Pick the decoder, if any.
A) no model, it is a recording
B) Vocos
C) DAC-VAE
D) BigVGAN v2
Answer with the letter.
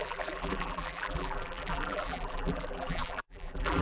D